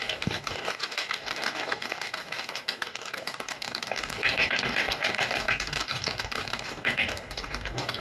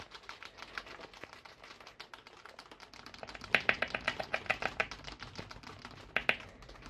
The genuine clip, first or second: second